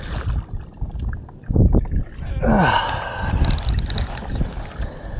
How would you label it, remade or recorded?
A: recorded